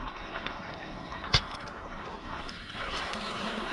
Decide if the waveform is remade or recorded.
remade